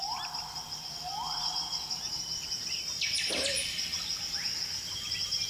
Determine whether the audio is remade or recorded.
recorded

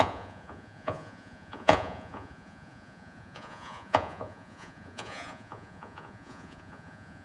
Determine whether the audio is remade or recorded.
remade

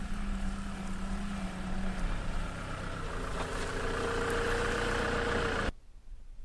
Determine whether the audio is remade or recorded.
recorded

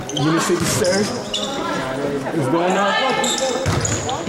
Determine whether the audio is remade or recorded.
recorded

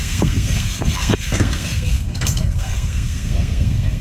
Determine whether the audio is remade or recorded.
remade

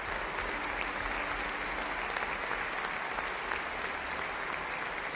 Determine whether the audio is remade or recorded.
recorded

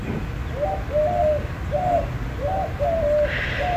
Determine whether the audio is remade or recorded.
recorded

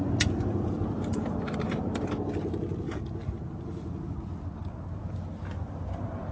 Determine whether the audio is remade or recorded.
recorded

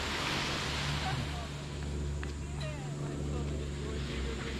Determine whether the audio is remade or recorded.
recorded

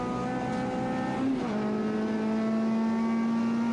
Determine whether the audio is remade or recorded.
recorded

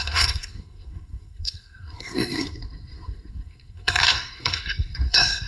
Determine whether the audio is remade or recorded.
remade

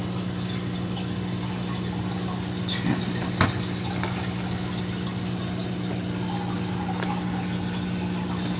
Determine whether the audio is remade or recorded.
recorded